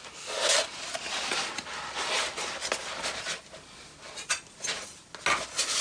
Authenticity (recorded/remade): recorded